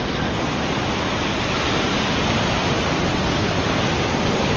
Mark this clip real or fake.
real